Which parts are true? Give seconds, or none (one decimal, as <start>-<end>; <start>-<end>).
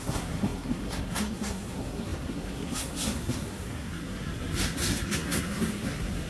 none